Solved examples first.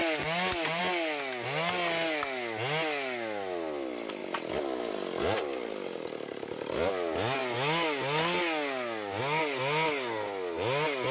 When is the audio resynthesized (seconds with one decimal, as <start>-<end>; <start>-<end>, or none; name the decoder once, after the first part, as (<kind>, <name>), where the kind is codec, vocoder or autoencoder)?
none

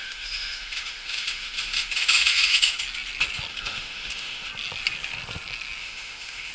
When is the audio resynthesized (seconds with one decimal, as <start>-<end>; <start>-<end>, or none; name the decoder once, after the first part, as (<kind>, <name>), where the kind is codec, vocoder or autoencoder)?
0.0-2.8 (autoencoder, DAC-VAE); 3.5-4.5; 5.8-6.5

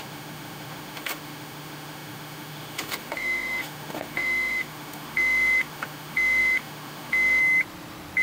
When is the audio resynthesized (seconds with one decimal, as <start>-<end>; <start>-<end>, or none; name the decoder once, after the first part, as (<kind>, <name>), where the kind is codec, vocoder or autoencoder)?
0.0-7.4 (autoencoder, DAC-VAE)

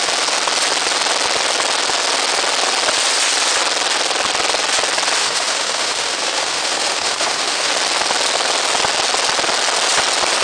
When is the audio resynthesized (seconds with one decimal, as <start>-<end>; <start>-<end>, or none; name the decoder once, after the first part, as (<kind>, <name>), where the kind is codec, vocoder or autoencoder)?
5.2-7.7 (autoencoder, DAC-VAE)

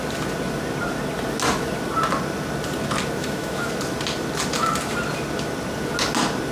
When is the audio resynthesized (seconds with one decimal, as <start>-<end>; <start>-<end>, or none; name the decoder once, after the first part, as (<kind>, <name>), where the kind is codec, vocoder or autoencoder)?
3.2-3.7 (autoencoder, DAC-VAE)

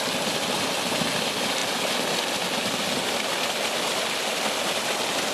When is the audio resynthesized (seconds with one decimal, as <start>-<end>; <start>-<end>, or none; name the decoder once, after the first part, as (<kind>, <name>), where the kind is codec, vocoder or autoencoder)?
none

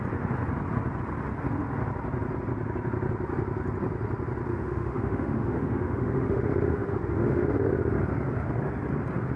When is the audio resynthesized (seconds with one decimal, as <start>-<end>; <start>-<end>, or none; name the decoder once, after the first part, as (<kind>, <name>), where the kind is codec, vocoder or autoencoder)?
4.5-7.7 (autoencoder, DAC-VAE)

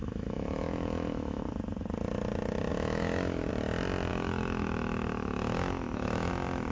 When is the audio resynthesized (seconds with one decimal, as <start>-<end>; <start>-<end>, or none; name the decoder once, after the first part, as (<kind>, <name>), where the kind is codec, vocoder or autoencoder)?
0.0-1.4 (autoencoder, DAC-VAE); 2.7-3.5; 4.1-6.3